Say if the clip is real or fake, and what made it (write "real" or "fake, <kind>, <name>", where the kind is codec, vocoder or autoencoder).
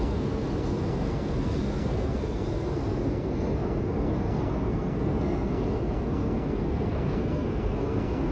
fake, codec, SNAC